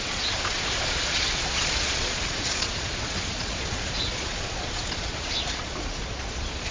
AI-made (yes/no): yes